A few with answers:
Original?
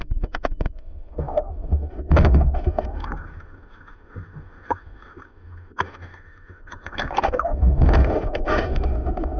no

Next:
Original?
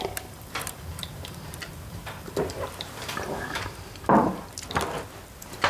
no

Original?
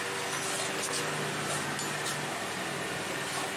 yes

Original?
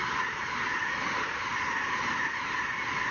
no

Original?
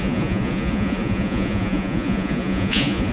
no